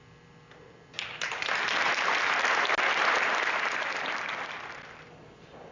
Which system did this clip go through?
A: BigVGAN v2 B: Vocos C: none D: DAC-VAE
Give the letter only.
C